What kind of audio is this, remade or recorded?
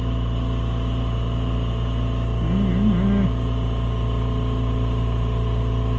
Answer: recorded